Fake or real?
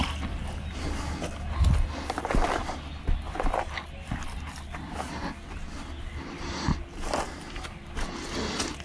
real